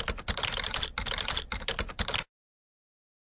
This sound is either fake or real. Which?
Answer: real